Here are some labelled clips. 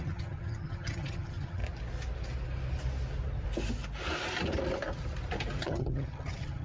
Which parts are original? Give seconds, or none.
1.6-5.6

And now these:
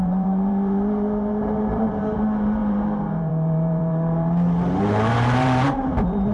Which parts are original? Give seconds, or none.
none

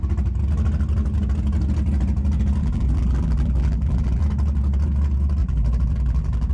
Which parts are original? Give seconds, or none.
0.0-2.6; 4.2-5.4

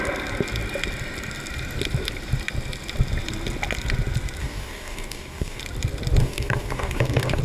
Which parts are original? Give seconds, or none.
0.0-4.4; 5.6-6.2

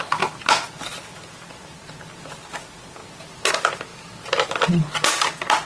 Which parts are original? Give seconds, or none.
0.0-5.7

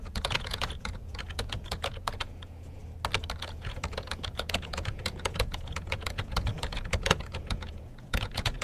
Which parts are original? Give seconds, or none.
2.8-3.4

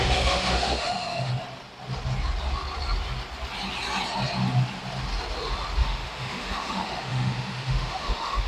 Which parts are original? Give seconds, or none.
1.3-5.8

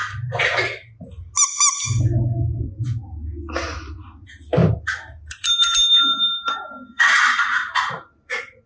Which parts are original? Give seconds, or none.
0.0-4.6